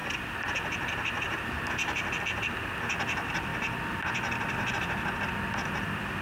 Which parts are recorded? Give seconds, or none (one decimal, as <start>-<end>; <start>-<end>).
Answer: 0.0-6.2